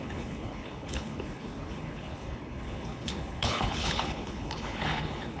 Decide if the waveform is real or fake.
fake